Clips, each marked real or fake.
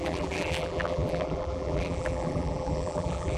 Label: fake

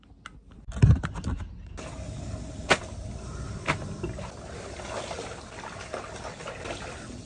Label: real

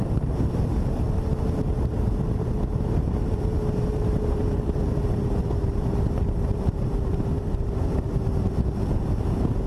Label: fake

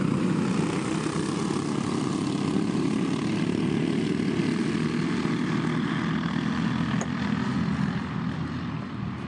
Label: real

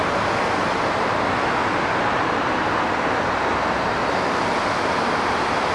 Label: real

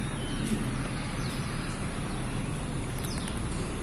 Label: real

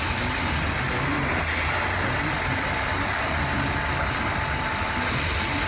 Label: real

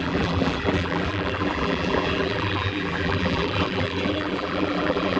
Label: fake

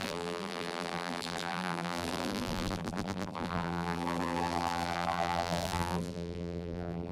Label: fake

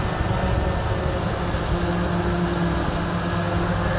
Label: real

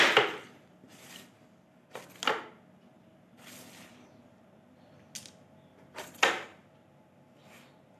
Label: real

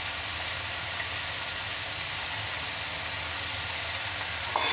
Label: real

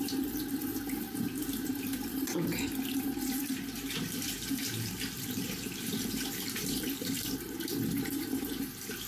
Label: fake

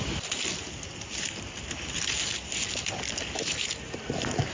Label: real